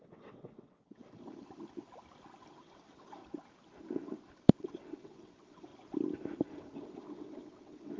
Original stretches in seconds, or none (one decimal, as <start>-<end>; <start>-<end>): 1.0-2.5; 3.2-4.6; 5.7-6.8